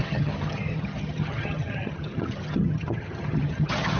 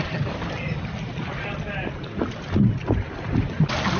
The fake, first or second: first